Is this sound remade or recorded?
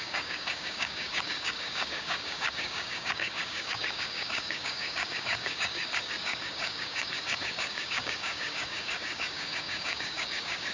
remade